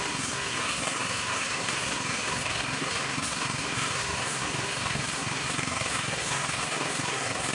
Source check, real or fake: fake